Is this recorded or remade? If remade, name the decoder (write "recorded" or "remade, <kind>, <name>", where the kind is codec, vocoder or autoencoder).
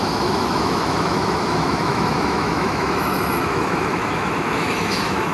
remade, autoencoder, DAC-VAE